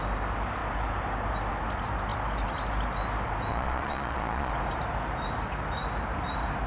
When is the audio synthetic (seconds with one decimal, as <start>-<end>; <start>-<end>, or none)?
3.5-4.5